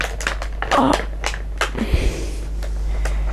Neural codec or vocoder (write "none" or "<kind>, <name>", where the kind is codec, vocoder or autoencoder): none